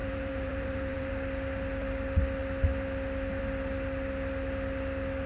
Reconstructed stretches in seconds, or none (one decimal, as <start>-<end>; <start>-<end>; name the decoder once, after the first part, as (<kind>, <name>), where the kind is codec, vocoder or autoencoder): 0.0-1.1 (vocoder, BigVGAN v2)